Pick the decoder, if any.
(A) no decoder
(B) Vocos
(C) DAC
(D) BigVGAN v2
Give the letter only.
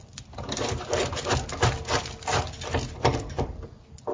A